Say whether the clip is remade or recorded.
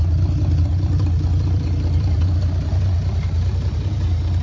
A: remade